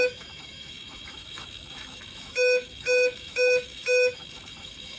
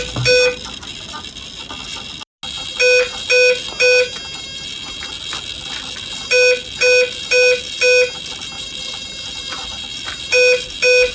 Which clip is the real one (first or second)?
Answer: second